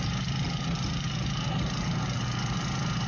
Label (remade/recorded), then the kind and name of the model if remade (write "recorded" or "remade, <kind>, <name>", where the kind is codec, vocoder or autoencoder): recorded